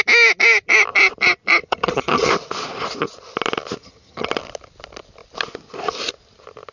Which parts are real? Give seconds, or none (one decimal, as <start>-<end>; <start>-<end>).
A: 0.0-1.6; 2.3-3.8; 4.3-6.7